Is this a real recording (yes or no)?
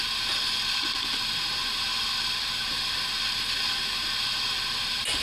yes